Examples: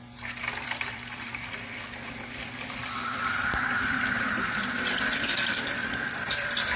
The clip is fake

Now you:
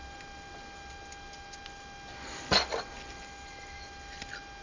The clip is real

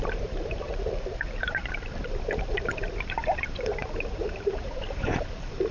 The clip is fake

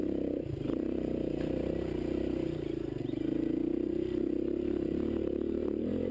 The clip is fake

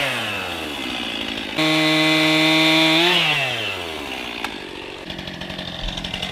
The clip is real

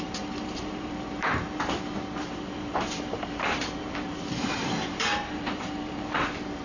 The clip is fake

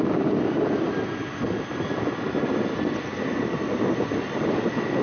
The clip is real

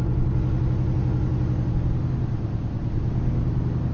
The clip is real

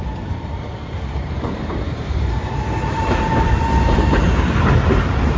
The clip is fake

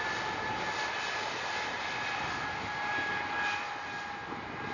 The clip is real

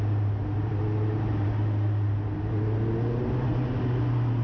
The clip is real